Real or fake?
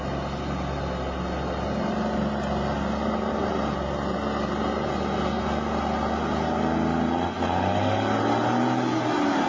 real